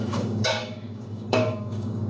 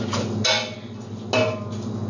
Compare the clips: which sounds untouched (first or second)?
second